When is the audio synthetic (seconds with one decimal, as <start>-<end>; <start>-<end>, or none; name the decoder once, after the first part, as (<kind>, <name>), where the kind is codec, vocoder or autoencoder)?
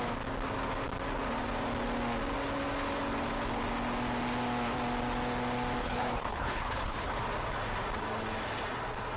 5.8-7.2 (codec, HILCodec)